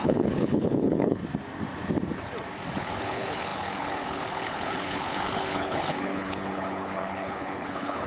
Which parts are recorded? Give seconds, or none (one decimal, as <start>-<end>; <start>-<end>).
1.2-2.7